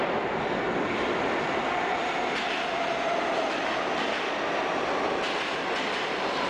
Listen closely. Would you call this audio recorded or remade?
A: recorded